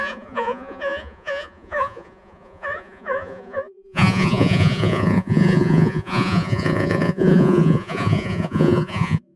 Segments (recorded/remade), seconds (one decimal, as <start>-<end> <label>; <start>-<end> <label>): 0.0-9.4 remade